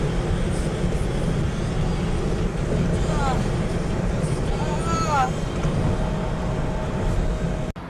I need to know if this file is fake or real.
real